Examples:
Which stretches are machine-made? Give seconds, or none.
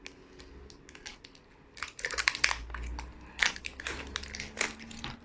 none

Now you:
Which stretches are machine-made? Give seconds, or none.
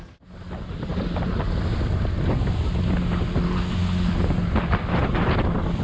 none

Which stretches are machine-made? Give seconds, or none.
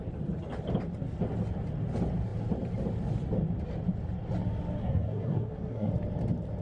4.8-5.9 (codec, SNAC)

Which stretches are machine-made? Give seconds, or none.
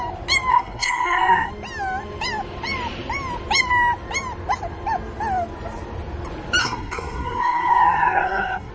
0.5-1.5 (codec, SNAC); 6.6-8.7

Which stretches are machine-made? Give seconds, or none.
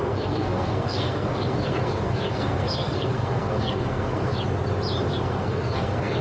0.0-4.3 (codec, SNAC); 5.1-6.2